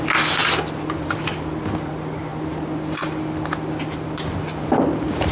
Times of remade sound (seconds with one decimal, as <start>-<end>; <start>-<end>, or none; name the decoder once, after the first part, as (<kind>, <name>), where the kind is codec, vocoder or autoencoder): none